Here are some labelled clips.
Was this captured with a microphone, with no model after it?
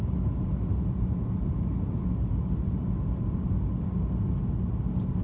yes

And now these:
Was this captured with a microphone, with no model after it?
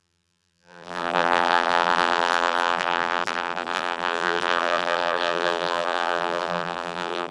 no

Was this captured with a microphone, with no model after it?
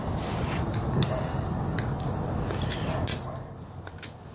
yes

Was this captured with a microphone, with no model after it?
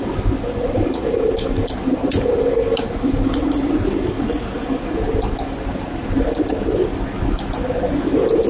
yes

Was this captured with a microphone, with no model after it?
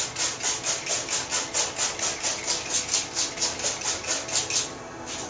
yes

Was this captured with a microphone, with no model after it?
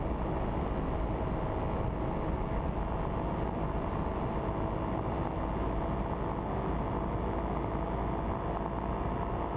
yes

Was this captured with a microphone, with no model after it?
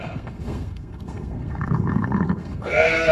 no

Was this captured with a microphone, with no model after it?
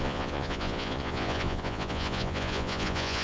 no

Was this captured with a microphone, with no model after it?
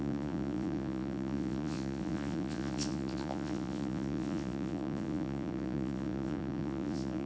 no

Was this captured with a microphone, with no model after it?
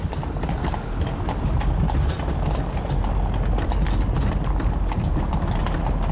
yes